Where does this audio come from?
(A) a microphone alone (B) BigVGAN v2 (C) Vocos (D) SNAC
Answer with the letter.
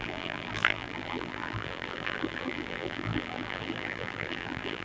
B